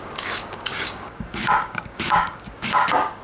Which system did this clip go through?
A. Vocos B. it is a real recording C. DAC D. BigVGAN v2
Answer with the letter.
C